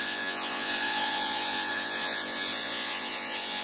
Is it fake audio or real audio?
fake